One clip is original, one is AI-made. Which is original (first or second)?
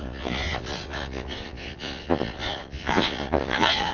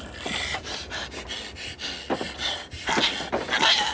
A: second